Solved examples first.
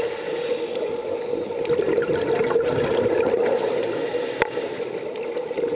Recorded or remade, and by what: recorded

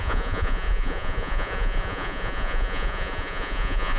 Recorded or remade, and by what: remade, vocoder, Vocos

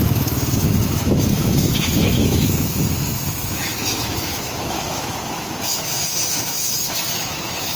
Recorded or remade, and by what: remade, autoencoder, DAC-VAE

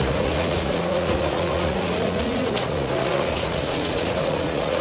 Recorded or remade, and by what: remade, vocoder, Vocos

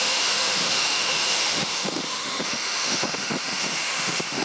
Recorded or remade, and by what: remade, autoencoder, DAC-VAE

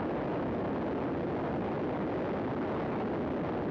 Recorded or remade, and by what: recorded